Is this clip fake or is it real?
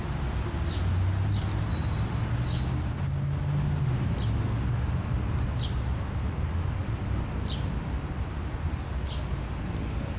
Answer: real